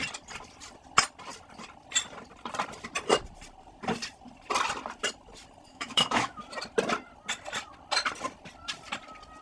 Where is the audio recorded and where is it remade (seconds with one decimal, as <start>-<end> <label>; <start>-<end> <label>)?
0.0-5.7 recorded; 5.7-6.4 remade; 6.4-9.4 recorded